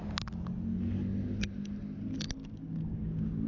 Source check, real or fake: real